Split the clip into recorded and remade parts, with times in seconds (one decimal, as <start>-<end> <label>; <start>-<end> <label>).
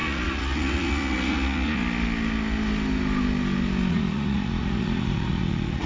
0.0-1.8 remade; 1.8-3.9 recorded; 3.9-5.9 remade